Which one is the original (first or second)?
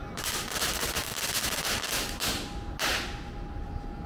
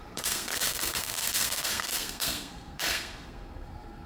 first